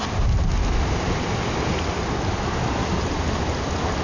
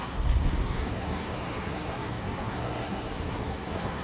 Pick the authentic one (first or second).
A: first